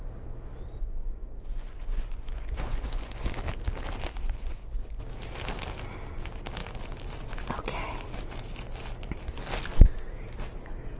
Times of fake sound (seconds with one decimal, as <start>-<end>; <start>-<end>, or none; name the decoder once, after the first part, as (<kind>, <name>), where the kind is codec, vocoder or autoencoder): 0.8-3.3 (vocoder, Vocos); 4.1-5.0